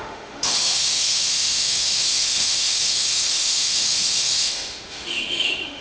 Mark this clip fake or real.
fake